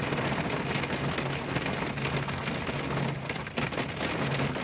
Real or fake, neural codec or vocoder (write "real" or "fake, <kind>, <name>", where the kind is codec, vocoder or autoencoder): real